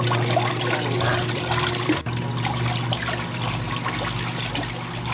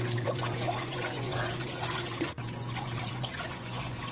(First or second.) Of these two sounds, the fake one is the second